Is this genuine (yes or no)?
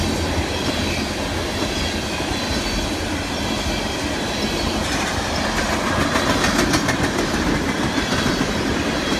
yes